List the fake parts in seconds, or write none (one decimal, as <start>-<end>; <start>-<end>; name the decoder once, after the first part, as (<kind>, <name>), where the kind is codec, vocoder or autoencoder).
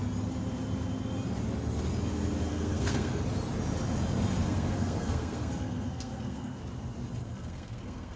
2.5-3.2 (codec, SNAC); 4.4-6.6; 7.2-8.2